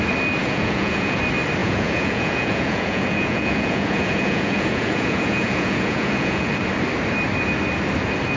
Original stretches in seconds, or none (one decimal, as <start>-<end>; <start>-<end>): 0.0-0.4; 1.2-1.6; 6.5-8.4